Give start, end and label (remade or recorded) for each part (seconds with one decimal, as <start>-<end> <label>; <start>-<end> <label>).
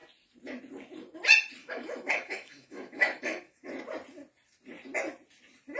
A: 0.0-1.6 recorded; 1.6-3.7 remade; 3.7-5.8 recorded